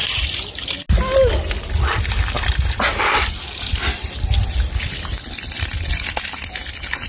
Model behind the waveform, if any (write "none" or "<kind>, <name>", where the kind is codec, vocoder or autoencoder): none